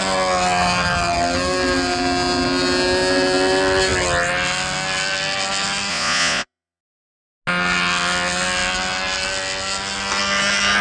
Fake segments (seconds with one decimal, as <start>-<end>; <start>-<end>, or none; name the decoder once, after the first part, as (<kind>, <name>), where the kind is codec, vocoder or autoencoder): 5.9-6.8 (vocoder, Vocos)